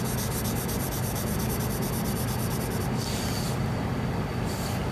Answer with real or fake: fake